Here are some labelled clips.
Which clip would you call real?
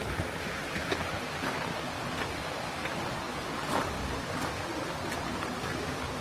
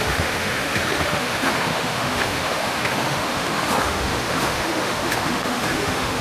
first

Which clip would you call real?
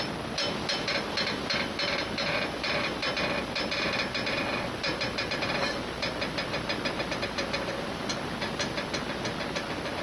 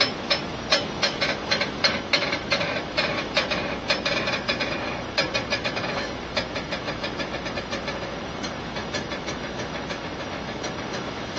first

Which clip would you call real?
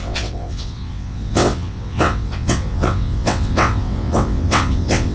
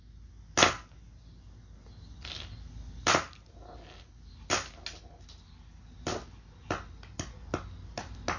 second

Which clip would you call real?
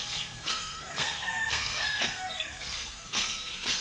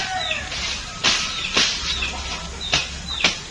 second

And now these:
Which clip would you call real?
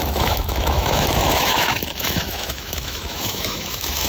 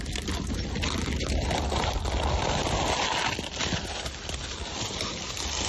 second